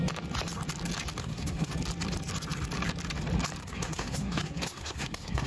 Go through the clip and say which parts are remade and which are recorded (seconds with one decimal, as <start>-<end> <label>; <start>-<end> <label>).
0.0-1.2 recorded; 1.2-1.7 remade; 1.7-3.6 recorded; 3.6-5.5 remade